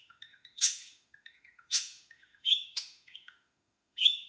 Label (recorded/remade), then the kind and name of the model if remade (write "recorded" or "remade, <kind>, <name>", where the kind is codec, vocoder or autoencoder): remade, autoencoder, DAC-VAE